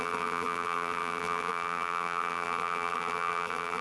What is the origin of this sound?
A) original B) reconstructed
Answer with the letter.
B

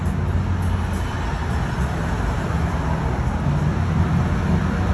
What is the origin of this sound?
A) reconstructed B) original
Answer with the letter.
B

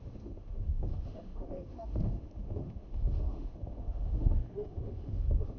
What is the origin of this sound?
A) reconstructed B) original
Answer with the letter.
A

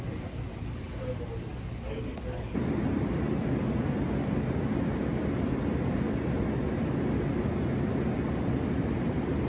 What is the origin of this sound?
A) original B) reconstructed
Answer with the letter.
A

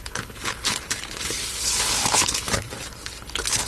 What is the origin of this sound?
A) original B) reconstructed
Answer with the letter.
B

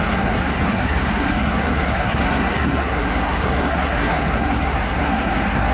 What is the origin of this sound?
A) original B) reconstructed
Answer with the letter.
B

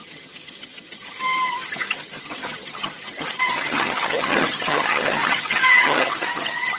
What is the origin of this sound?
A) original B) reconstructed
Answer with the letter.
B